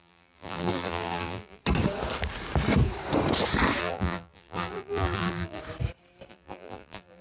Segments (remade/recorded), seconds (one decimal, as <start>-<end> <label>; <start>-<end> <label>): 0.0-1.6 remade; 1.6-3.8 recorded; 3.8-5.6 remade; 5.6-6.3 recorded; 6.3-7.2 remade